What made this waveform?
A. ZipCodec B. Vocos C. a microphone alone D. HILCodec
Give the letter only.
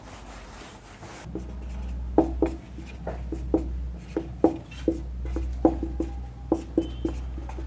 C